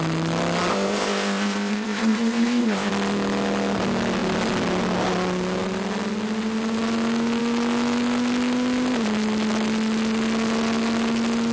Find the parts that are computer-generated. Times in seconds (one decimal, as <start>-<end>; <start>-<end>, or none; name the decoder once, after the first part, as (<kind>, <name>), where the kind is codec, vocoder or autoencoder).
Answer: 0.7-2.9 (codec, ZipCodec)